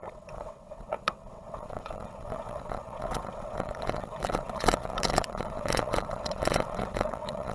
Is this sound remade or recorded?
remade